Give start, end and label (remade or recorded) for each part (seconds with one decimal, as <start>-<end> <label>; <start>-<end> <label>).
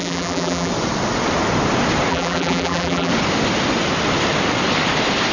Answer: 0.0-0.7 remade; 0.7-2.1 recorded; 2.1-3.1 remade; 3.1-5.3 recorded